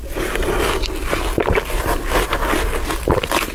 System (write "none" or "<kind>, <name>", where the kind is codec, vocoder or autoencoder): none